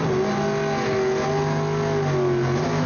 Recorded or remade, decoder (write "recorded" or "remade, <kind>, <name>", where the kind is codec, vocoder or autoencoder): recorded